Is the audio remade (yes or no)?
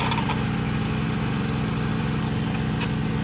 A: no